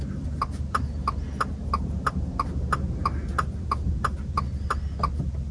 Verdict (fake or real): real